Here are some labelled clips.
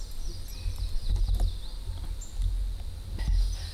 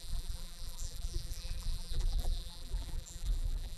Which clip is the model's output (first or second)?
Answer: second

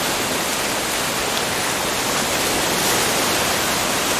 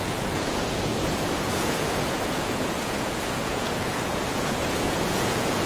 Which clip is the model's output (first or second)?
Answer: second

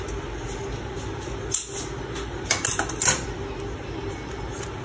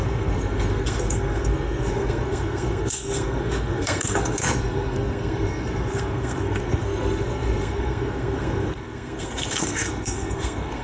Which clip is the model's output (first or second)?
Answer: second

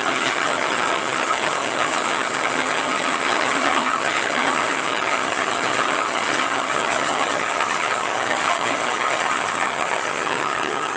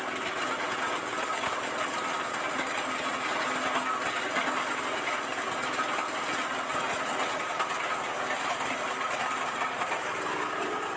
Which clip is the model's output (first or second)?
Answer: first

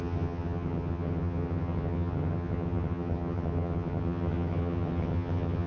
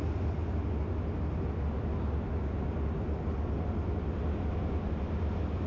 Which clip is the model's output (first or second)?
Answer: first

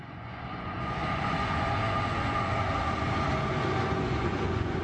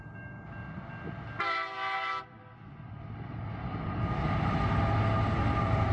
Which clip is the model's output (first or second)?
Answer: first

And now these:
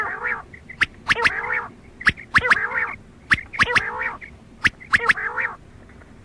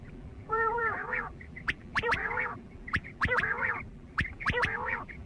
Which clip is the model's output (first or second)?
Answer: second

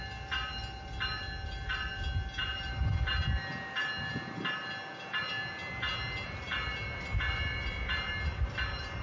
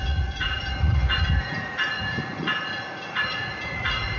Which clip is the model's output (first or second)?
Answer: second